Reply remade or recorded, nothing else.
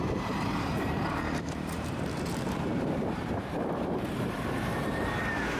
remade